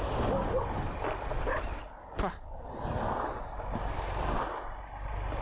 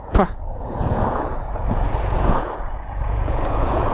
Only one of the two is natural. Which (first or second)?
first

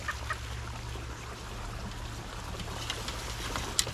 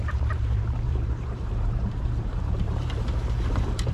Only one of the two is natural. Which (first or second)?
first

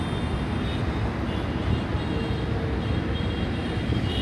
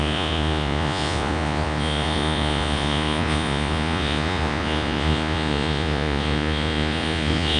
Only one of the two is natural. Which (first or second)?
first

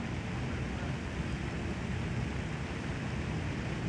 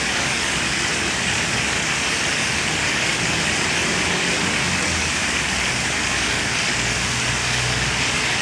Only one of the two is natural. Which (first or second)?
first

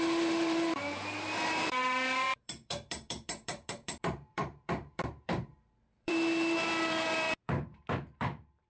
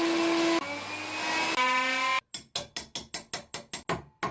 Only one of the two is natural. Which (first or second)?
second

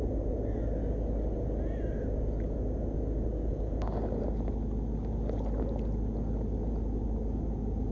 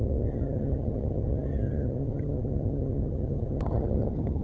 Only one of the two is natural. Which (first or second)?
first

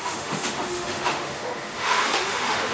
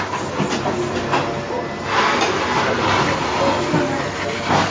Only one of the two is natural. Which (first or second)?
second